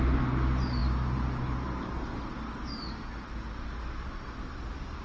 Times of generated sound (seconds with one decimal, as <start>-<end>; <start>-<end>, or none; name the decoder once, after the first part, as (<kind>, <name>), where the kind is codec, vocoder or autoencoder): none